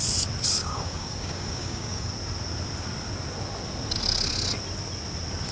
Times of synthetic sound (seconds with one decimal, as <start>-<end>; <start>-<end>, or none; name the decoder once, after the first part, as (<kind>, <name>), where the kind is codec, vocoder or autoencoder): 0.6-2.1 (codec, DAC)